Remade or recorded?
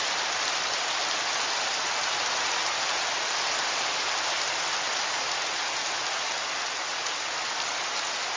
recorded